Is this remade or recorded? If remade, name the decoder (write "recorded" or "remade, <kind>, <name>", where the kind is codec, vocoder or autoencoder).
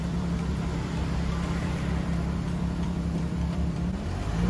remade, vocoder, BigVGAN v2